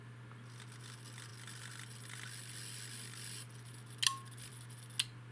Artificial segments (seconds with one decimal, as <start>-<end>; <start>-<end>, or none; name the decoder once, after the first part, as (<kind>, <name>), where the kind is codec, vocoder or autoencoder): none